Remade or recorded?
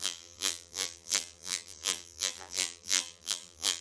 remade